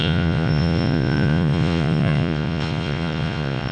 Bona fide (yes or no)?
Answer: no